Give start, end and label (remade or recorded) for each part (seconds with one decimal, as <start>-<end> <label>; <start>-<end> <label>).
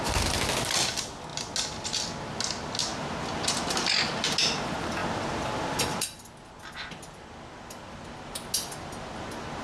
0.0-9.6 recorded